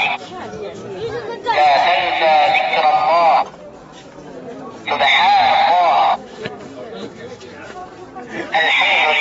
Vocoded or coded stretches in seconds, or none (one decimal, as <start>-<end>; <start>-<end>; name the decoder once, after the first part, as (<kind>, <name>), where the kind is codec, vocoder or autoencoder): 0.0-0.8 (autoencoder, DAC-VAE); 5.5-7.8; 8.5-9.2